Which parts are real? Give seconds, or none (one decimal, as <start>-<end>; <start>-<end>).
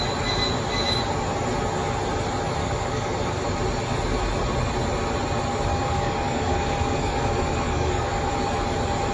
0.0-2.6; 3.4-5.7; 8.3-9.1